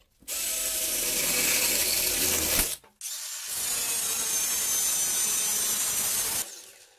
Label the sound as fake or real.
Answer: real